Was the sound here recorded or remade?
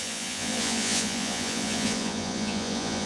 remade